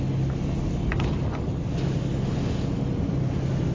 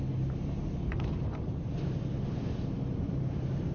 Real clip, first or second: first